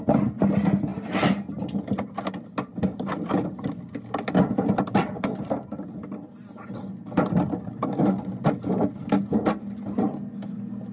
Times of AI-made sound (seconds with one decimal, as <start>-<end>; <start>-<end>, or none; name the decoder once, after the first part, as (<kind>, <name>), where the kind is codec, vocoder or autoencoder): none